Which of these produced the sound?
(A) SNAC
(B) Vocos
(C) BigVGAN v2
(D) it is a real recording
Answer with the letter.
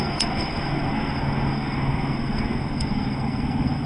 A